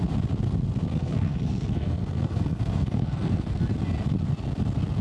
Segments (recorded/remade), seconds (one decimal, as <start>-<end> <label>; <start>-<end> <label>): 0.0-1.0 recorded; 1.0-3.6 remade; 3.6-5.0 recorded